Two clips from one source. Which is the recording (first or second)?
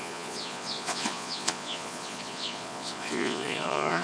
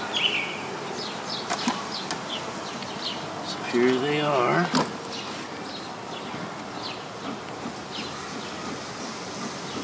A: second